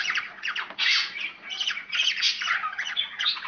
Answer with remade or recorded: remade